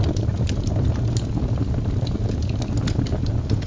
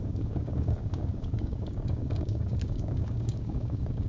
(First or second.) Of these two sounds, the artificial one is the second